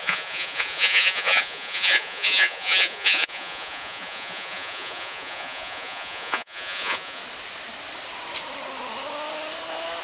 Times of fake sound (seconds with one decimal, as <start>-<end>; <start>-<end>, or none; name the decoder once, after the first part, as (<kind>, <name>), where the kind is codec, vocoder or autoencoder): 0.0-7.2 (vocoder, Vocos)